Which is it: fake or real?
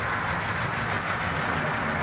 real